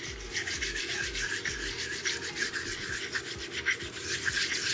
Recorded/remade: recorded